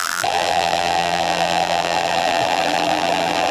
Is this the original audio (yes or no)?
no